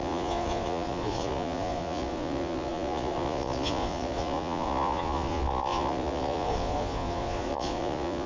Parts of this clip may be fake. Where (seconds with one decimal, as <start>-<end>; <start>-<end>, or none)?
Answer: 0.0-8.3